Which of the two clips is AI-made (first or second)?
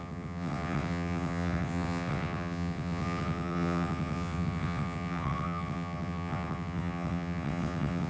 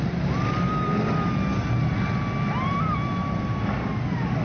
first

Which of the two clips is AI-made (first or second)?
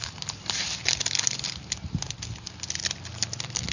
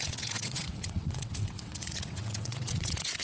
second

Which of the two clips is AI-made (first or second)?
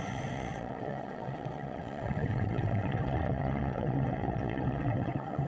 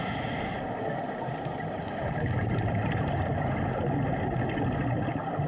first